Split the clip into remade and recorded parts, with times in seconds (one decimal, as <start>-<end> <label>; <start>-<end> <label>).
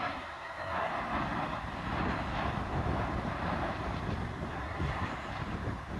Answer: 0.0-0.9 remade; 0.9-4.5 recorded; 4.5-5.1 remade; 5.1-6.0 recorded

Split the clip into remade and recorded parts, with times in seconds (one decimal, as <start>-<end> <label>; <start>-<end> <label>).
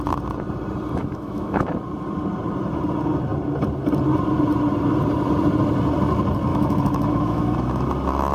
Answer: 0.0-1.0 recorded; 1.0-1.7 remade; 1.7-6.5 recorded; 6.5-7.9 remade; 7.9-8.3 recorded